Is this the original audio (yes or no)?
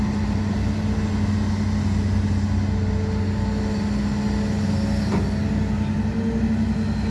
yes